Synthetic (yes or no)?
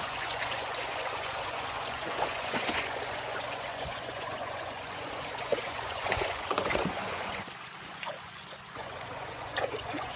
yes